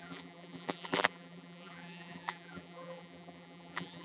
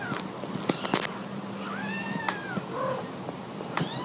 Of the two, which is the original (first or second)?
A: second